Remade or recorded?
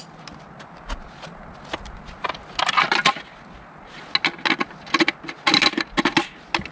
recorded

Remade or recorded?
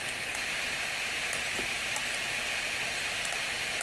recorded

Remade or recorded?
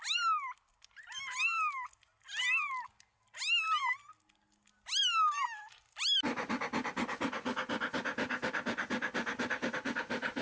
recorded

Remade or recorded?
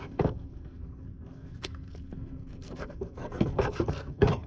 remade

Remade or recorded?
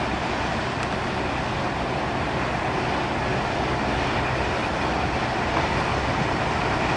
recorded